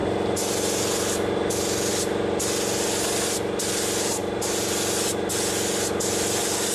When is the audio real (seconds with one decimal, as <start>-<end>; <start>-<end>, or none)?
0.0-6.7